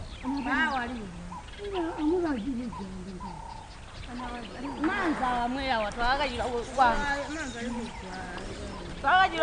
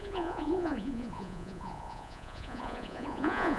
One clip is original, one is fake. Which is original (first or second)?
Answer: first